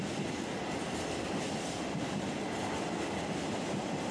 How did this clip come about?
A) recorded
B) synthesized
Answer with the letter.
A